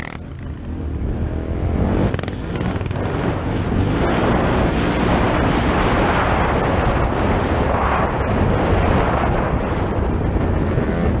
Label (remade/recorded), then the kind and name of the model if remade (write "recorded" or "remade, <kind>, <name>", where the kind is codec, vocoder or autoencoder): recorded